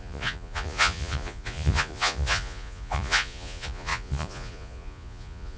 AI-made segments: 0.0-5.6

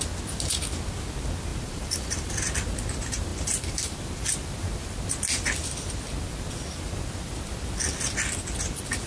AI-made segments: 1.5-2.3; 3.3-4.0

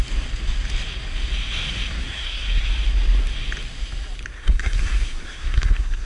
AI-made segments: 2.0-2.7; 4.3-6.1

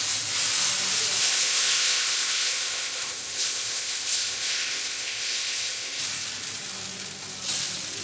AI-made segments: 1.2-6.0

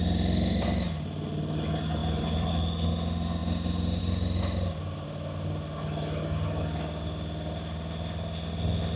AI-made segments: 2.0-2.5

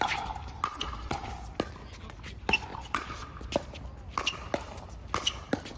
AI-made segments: 0.7-1.3; 2.7-3.3

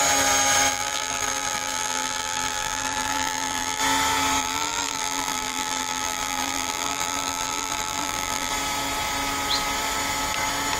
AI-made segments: 0.7-3.8; 4.4-8.5